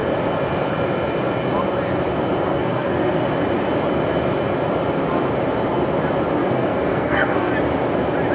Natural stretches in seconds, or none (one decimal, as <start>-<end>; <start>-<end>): 0.0-2.5; 3.3-6.4; 7.5-8.3